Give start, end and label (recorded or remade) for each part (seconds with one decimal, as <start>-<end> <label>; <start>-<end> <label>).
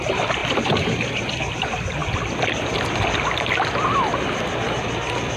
0.0-5.4 recorded